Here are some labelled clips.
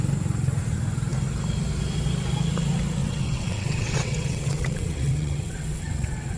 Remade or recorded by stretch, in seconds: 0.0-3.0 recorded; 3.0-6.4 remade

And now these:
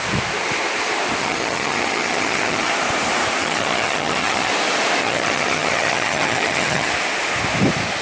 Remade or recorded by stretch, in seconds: 0.0-1.2 recorded; 1.2-2.7 remade; 2.7-3.4 recorded; 3.4-4.5 remade; 4.5-5.0 recorded; 5.0-6.9 remade; 6.9-8.0 recorded

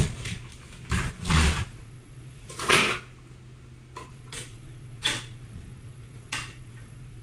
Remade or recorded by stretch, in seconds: 0.0-0.5 remade; 0.5-1.1 recorded; 1.1-2.8 remade; 2.8-4.1 recorded; 4.1-7.2 remade

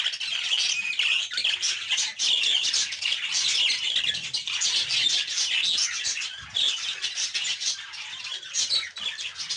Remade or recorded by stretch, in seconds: 0.0-7.5 recorded; 7.5-8.1 remade; 8.1-9.6 recorded

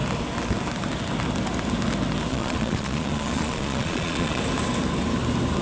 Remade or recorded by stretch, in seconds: 0.0-2.3 recorded; 2.3-4.4 remade; 4.4-5.6 recorded

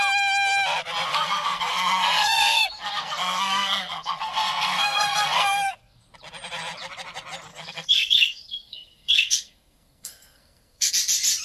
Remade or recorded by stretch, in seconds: 0.0-1.1 recorded; 1.1-6.1 remade; 6.1-7.5 recorded; 7.5-10.9 remade; 10.9-11.4 recorded